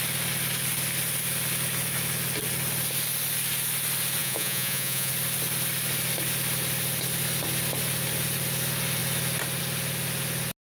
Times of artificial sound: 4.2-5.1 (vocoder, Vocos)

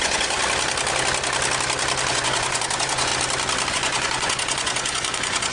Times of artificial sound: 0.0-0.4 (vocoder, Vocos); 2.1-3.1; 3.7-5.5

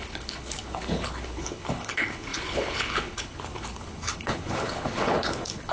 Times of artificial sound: 0.0-5.7 (codec, HILCodec)

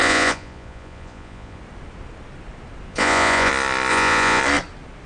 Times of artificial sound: 0.0-1.6 (vocoder, Vocos); 2.9-3.5; 3.9-4.4

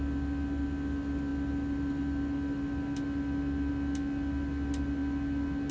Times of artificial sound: none